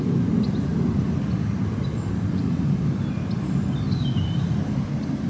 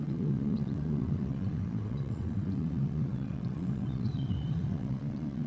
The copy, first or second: second